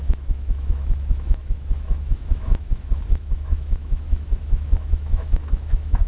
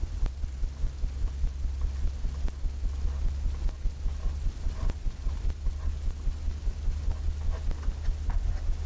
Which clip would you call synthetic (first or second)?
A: first